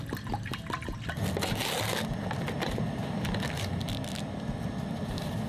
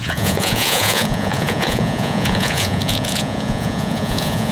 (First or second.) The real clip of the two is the first